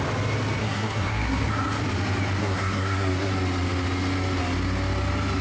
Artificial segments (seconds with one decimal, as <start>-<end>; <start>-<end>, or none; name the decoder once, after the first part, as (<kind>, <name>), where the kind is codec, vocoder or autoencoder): 0.6-1.8 (codec, SNAC); 2.4-3.3

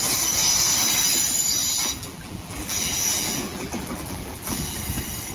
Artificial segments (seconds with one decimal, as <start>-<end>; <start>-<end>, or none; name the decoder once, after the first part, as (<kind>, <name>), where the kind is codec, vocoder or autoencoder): 1.6-4.8 (vocoder, BigVGAN v2)